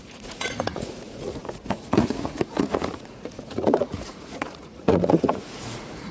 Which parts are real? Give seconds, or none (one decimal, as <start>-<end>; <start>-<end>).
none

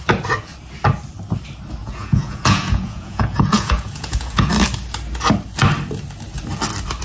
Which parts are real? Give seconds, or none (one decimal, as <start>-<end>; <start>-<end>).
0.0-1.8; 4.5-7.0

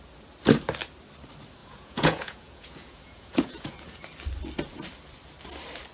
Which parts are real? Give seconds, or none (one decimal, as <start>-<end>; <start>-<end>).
0.0-1.6; 4.0-5.9

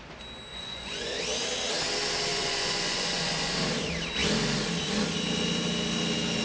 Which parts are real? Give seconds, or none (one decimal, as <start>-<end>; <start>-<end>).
0.0-0.5; 1.2-2.3; 3.5-6.4